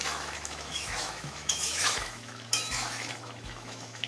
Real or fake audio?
fake